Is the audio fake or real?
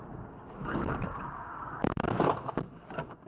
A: fake